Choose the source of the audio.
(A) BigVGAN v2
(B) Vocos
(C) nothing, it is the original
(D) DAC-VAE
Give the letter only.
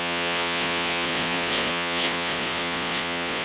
B